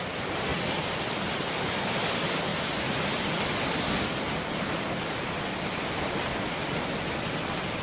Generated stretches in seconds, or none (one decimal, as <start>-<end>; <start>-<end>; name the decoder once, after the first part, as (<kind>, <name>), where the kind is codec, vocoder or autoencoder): none

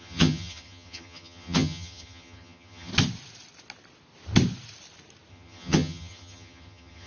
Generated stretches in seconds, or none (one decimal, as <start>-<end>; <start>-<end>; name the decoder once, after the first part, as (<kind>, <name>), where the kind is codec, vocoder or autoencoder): 0.0-2.9 (vocoder, HiFi-GAN); 5.3-7.1